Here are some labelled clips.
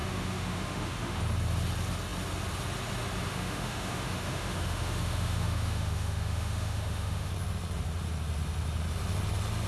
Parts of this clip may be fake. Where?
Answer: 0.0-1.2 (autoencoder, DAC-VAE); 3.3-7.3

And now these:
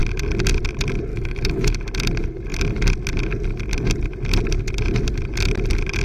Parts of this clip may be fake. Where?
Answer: 1.1-1.7 (autoencoder, DAC-VAE)

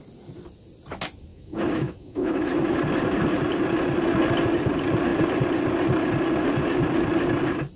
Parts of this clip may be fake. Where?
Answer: 1.3-2.8 (autoencoder, DAC-VAE)

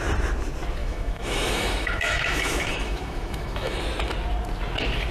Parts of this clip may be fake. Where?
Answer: 0.8-3.8 (autoencoder, DAC-VAE)